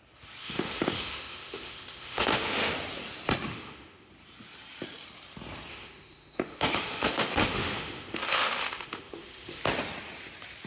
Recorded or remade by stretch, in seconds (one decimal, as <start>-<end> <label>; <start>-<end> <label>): 0.0-0.4 recorded; 0.4-2.7 remade; 2.7-3.5 recorded; 3.5-4.1 remade; 4.1-5.7 recorded; 5.7-9.6 remade; 9.6-10.7 recorded